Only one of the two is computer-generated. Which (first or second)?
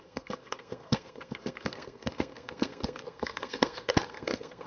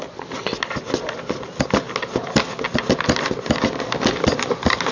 first